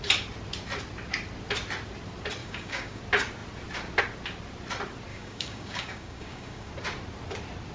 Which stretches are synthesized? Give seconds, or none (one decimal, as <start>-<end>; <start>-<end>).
2.4-3.0; 5.1-6.7